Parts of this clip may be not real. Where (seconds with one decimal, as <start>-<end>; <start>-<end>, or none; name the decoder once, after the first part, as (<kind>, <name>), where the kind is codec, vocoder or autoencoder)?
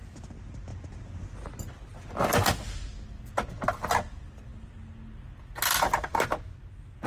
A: none